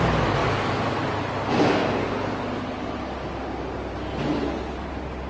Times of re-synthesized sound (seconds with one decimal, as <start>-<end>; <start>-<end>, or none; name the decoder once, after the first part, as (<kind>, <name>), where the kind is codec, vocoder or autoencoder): none